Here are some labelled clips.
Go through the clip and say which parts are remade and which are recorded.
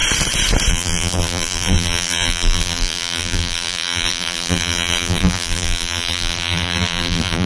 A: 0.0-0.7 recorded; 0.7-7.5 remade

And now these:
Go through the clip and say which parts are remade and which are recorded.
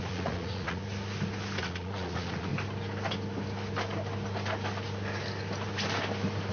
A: 0.0-0.8 remade; 0.8-1.6 recorded; 1.6-2.5 remade; 2.5-6.5 recorded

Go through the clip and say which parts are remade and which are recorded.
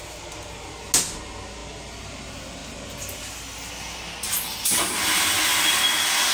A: 0.0-6.3 recorded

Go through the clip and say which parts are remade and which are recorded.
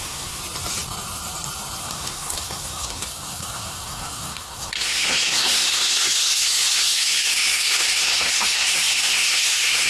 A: 0.0-0.4 remade; 0.4-1.8 recorded; 1.8-9.9 remade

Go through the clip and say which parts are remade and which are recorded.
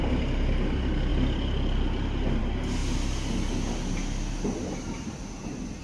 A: 0.0-5.8 recorded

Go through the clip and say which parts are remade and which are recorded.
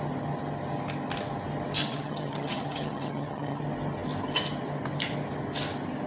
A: 0.0-1.8 recorded; 1.8-3.6 remade; 3.6-6.1 recorded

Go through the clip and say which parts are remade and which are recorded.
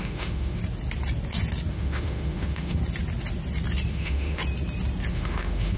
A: 0.0-0.6 remade; 0.6-1.7 recorded; 1.7-2.8 remade; 2.8-3.9 recorded; 3.9-4.4 remade; 4.4-5.1 recorded; 5.1-5.8 remade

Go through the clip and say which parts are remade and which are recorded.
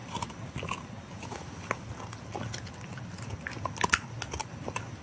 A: 0.0-5.0 recorded